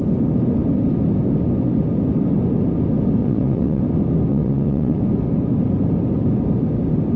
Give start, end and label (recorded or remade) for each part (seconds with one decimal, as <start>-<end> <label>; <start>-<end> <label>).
0.0-3.2 recorded; 3.2-3.8 remade; 3.8-4.3 recorded; 4.3-5.0 remade; 5.0-7.2 recorded